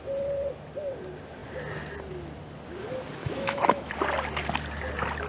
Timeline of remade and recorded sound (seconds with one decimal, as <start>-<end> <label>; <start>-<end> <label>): 0.0-3.2 recorded; 3.2-3.9 remade; 3.9-5.3 recorded